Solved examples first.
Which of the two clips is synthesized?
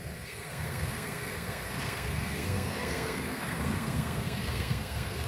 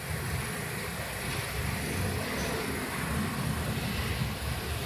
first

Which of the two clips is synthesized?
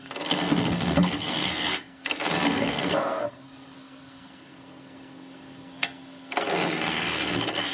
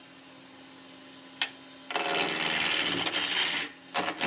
first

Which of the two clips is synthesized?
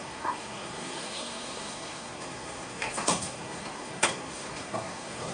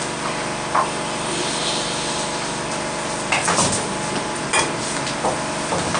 first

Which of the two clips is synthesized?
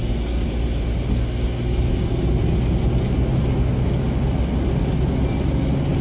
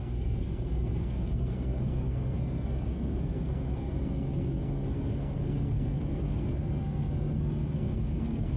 second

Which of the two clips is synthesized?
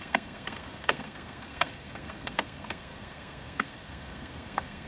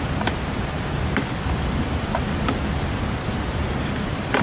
first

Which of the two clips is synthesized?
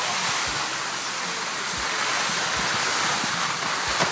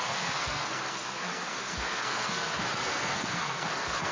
second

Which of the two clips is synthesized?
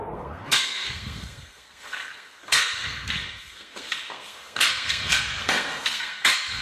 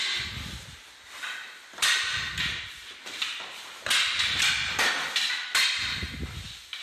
first